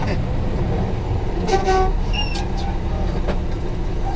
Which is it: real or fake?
real